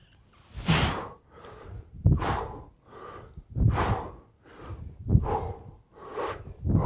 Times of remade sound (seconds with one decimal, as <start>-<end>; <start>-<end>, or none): none